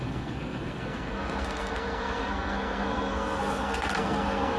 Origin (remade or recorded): remade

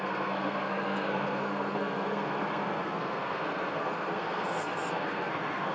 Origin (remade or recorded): remade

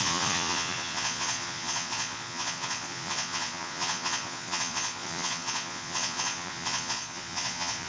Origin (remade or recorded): remade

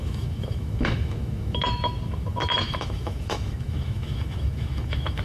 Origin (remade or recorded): remade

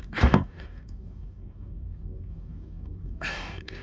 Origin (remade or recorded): remade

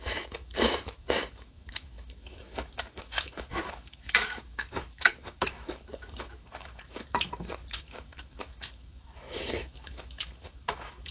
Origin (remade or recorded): remade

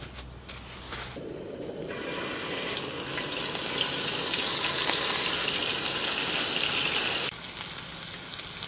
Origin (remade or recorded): recorded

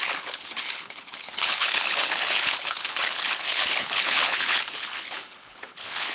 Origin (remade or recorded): remade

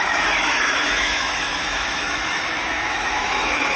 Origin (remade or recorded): remade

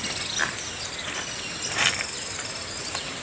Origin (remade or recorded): recorded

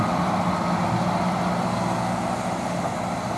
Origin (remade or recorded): recorded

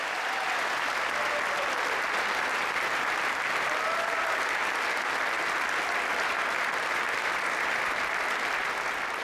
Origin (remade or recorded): recorded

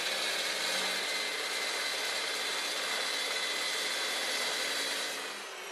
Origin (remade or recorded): recorded